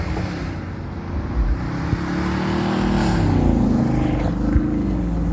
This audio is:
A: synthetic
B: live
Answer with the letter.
B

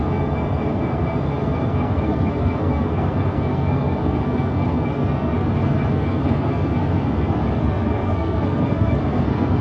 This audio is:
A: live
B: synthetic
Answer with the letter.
B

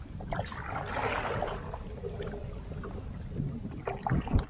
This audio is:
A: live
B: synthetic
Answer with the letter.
A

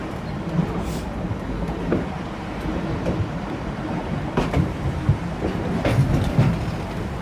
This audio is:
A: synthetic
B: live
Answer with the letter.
B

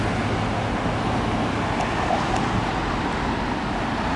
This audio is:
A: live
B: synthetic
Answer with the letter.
A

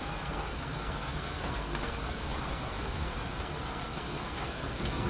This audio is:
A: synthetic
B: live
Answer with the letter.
A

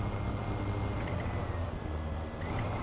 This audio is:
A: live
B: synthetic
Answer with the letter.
A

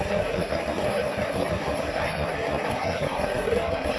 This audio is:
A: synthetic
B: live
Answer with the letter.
A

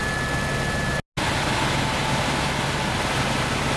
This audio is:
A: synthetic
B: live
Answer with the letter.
B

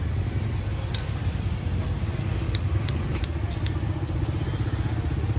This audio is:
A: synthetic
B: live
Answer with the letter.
B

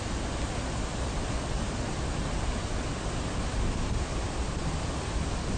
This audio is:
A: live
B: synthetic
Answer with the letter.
A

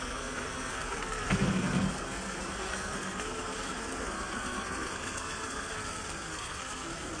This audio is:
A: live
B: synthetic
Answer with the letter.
B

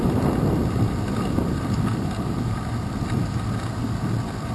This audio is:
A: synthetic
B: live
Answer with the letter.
B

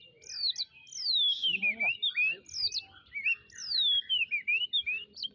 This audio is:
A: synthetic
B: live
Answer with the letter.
B